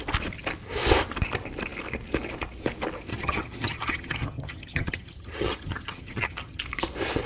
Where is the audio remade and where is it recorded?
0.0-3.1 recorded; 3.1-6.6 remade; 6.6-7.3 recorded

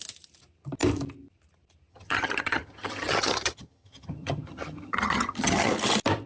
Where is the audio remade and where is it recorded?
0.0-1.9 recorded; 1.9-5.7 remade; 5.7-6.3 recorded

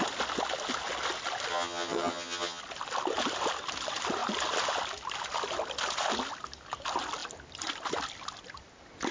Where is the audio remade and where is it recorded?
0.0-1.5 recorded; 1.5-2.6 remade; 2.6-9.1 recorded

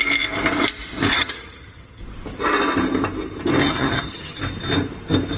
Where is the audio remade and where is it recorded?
0.0-1.1 recorded; 1.1-2.0 remade; 2.0-3.6 recorded; 3.6-4.4 remade; 4.4-5.4 recorded